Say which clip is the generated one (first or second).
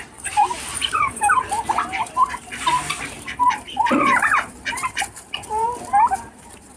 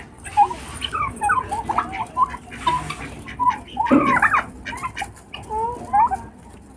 first